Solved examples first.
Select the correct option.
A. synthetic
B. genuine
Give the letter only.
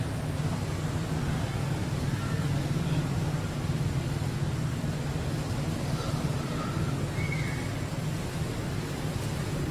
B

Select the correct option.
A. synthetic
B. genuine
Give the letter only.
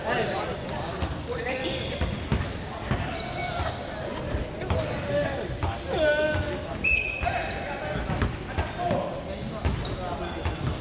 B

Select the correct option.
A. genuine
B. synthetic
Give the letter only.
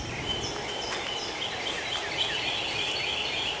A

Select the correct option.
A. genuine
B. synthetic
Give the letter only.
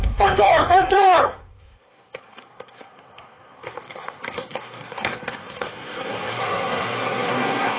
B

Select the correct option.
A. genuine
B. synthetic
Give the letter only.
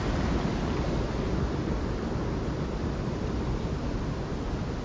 A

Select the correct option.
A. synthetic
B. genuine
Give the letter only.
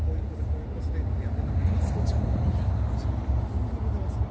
B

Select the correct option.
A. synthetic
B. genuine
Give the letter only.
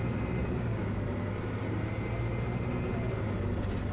B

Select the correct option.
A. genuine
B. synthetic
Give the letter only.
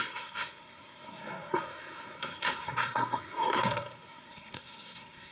B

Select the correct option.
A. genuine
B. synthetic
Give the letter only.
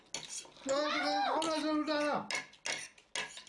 A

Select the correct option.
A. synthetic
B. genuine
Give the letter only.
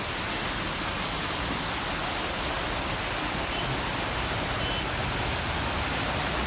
B